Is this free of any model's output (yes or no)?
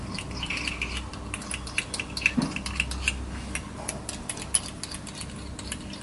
yes